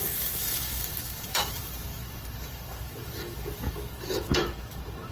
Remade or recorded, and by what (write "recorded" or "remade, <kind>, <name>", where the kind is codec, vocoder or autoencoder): remade, autoencoder, DAC-VAE